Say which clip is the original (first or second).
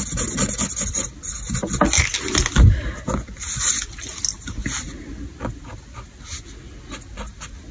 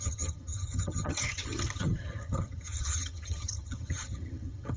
first